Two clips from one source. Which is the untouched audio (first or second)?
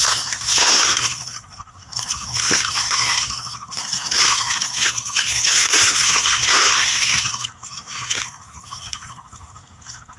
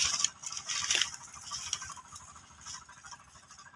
second